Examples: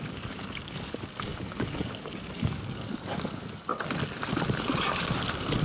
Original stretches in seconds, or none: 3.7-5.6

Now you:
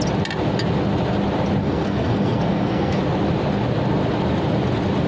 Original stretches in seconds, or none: 0.0-1.6; 3.0-5.1

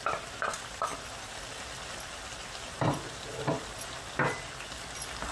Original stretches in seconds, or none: 0.0-5.3

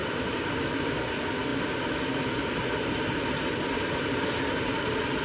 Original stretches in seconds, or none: 0.0-5.2